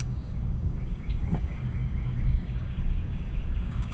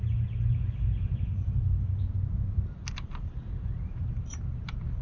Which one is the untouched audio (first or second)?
second